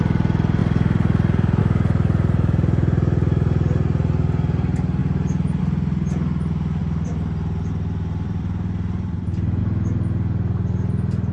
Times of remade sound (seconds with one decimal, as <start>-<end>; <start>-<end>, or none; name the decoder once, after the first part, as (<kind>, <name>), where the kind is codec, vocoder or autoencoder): 0.6-1.6 (vocoder, BigVGAN v2); 6.8-9.6